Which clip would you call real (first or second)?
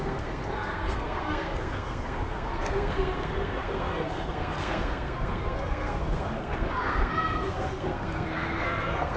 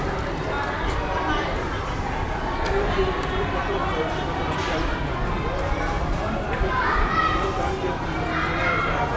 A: second